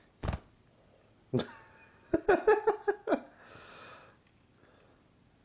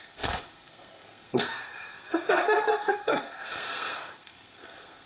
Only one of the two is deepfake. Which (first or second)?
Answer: second